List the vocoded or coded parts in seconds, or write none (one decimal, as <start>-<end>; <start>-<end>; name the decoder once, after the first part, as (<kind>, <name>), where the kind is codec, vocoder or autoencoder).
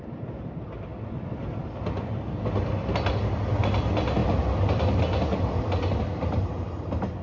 4.2-6.0 (vocoder, BigVGAN v2)